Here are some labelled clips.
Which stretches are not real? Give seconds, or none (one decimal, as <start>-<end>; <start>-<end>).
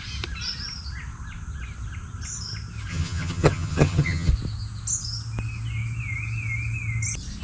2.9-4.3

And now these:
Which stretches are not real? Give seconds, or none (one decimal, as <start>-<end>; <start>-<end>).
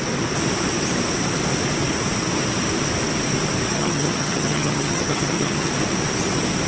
3.7-5.7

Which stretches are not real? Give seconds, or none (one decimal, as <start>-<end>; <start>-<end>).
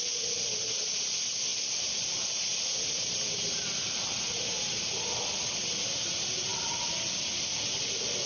none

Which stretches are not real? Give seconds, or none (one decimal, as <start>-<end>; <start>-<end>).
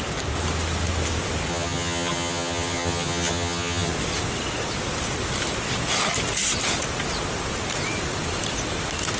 1.5-3.9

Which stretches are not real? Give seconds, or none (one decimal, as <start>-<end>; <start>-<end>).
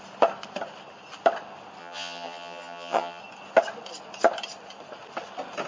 1.8-3.2